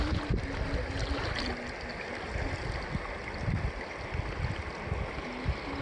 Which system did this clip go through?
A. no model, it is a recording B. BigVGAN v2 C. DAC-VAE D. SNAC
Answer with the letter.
A